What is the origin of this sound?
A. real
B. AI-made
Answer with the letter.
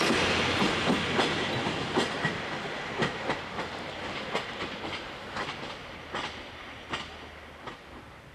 A